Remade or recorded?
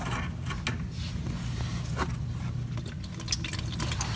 recorded